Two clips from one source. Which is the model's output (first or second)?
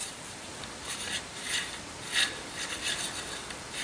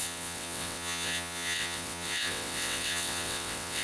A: second